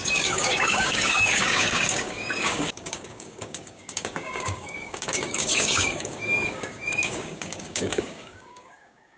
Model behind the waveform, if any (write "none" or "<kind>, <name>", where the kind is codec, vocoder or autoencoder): codec, DAC